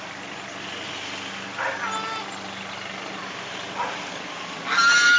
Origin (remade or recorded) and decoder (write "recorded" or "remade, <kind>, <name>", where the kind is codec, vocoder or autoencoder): recorded